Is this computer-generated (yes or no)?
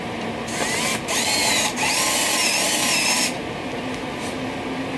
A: no